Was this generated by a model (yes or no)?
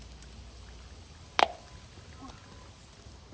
no